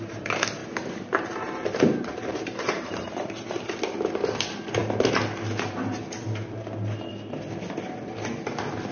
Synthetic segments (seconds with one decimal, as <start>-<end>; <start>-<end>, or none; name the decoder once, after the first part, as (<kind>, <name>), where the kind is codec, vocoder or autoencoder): 0.6-3.7 (vocoder, BigVGAN v2)

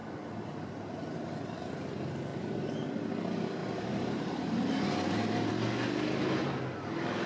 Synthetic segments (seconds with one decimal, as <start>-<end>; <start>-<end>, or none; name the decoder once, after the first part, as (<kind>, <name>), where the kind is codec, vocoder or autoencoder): 0.0-1.6 (vocoder, BigVGAN v2); 2.3-3.0; 3.6-5.5

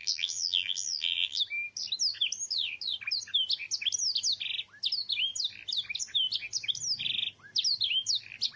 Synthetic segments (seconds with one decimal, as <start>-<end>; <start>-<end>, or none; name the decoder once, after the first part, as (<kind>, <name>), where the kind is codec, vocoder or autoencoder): 0.0-1.4 (vocoder, BigVGAN v2)

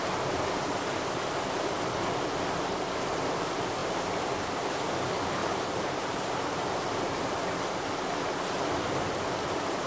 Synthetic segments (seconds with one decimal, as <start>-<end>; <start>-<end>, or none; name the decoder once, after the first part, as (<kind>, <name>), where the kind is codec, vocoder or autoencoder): 5.4-6.7 (vocoder, BigVGAN v2)

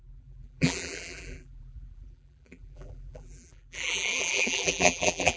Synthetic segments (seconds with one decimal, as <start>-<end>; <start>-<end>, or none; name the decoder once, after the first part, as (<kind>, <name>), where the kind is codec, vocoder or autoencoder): 0.0-5.4 (vocoder, BigVGAN v2)

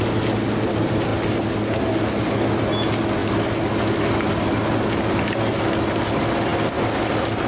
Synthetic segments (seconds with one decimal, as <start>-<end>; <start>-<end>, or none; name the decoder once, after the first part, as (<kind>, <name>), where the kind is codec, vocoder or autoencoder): none